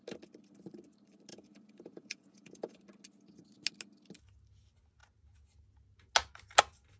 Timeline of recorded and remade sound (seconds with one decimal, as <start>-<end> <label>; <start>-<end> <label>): 0.0-1.3 recorded; 1.3-2.8 remade; 2.8-7.0 recorded